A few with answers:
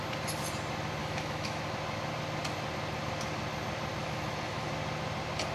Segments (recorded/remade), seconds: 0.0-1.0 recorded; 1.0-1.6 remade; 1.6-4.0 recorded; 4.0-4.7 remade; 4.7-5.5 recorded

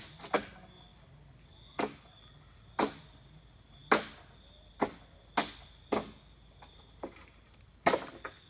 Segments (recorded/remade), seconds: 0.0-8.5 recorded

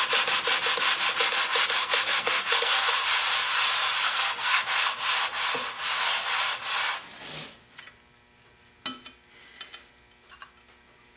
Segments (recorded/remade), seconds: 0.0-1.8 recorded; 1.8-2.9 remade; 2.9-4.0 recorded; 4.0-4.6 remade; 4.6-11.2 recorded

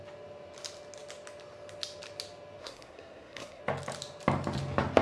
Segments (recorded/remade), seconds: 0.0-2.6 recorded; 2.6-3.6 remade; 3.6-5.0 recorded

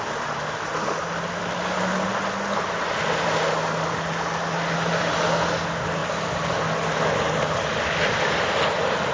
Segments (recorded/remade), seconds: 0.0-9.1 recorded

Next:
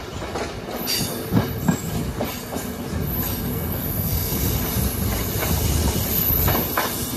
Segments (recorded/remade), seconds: 0.0-3.5 recorded; 3.5-4.5 remade; 4.5-7.2 recorded

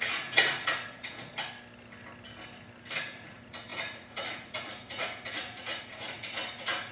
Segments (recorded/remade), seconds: 0.0-1.3 remade; 1.3-3.0 recorded; 3.0-6.9 remade

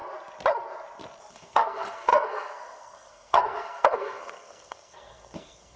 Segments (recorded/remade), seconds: 0.0-1.3 recorded; 1.3-5.8 remade